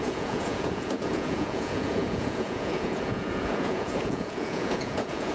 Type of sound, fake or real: fake